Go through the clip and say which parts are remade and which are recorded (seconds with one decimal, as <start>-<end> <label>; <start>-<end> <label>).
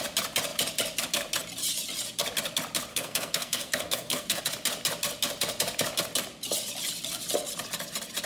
0.0-2.9 recorded; 2.9-4.4 remade; 4.4-8.3 recorded